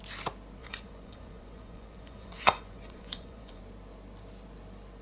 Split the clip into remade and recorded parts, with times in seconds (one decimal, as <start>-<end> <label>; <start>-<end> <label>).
0.0-0.6 recorded; 0.6-3.6 remade; 3.6-5.0 recorded